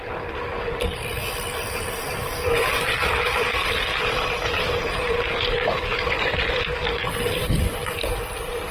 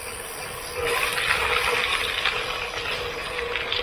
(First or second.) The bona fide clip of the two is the second